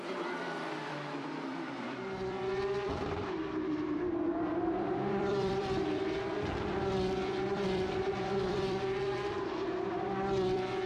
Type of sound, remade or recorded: remade